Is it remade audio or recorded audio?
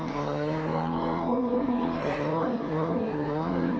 remade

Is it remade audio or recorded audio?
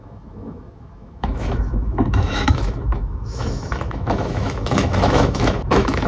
remade